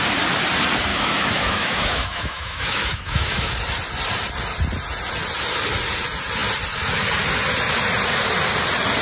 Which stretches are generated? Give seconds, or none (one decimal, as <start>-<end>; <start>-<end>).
0.9-3.5